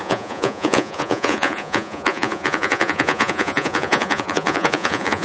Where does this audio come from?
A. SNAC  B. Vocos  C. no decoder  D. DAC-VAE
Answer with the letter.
B